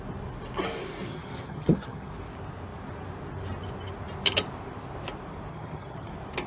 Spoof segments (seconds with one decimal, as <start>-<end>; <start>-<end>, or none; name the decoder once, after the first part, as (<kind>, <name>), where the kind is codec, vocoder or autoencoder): 1.1-2.1 (vocoder, HiFi-GAN); 5.5-6.1